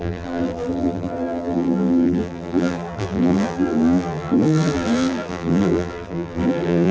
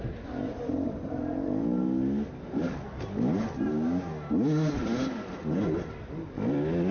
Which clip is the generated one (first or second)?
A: first